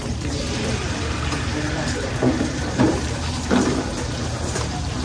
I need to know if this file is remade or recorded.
remade